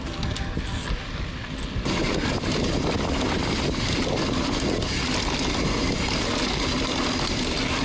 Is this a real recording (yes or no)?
yes